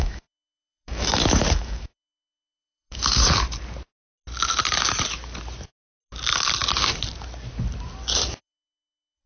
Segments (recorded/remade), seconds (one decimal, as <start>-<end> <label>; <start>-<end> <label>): 0.0-3.2 remade; 3.2-8.3 recorded; 8.3-9.3 remade